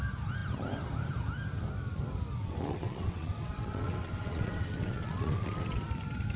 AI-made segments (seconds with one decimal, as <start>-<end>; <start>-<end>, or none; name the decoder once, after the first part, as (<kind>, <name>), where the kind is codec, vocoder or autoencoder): 2.4-5.8 (vocoder, WaveNeXt)